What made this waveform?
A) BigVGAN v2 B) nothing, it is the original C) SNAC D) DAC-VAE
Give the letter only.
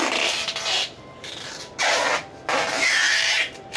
B